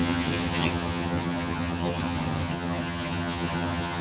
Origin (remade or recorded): remade